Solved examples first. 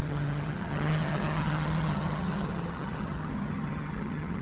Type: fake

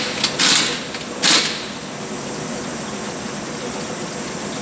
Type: real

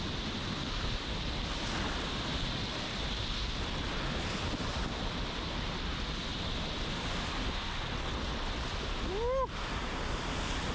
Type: real